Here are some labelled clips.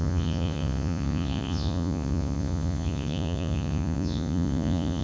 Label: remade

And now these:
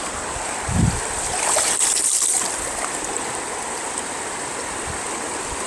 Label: remade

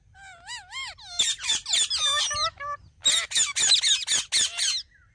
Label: recorded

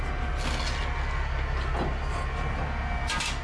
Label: recorded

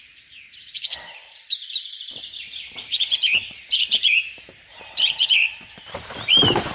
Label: remade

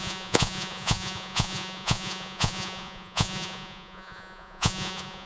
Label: remade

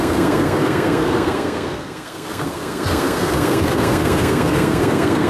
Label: remade